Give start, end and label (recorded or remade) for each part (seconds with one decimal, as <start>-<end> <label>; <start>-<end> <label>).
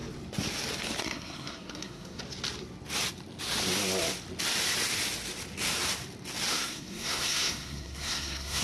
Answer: 0.0-1.0 recorded; 1.0-2.2 remade; 2.2-6.5 recorded; 6.5-8.6 remade